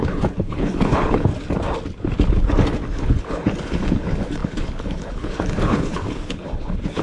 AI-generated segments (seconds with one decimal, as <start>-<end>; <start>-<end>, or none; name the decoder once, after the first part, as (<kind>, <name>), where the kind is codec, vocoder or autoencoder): 0.0-1.3 (codec, HILCodec); 3.2-7.0